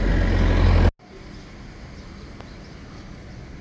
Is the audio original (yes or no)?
yes